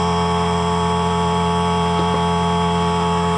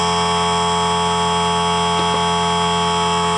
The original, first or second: second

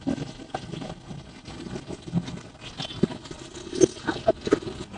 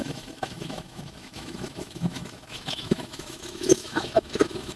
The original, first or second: first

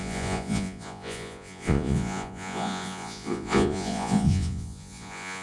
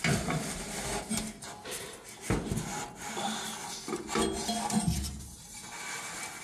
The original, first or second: second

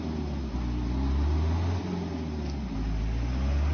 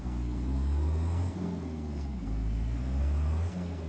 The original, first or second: first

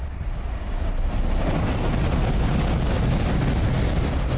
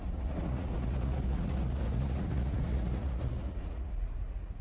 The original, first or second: first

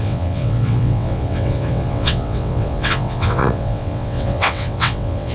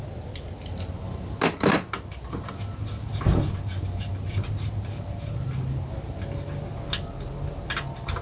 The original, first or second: second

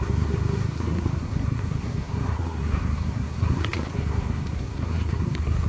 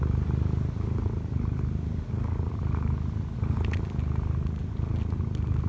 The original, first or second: second